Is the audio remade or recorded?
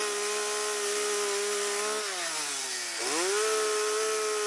recorded